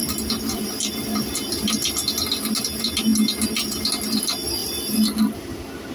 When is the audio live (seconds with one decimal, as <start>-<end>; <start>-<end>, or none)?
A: 0.0-5.9